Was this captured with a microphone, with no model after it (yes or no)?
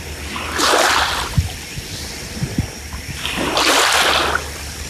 yes